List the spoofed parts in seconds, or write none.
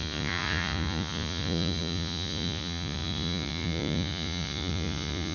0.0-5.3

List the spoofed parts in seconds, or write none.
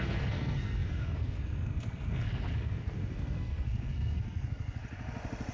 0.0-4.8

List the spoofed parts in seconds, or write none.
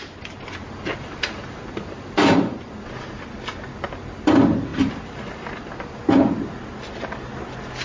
0.6-3.2; 4.7-6.0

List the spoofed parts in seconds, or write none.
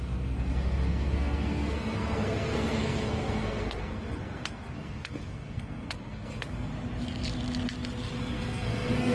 0.0-6.7; 8.2-9.1